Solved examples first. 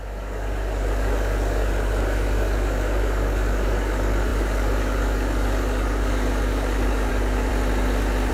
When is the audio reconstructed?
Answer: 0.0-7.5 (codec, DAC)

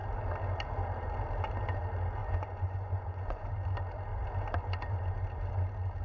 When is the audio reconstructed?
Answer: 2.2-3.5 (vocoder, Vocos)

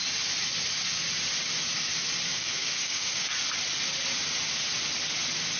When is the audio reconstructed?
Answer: 2.3-3.2 (codec, DAC)